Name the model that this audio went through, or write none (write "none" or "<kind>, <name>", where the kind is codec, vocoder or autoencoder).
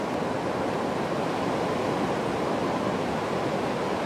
none